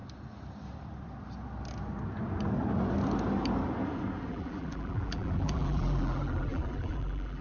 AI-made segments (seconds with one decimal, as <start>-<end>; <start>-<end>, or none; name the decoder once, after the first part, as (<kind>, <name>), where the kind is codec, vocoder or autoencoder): 4.3-7.4 (vocoder, BigVGAN v2)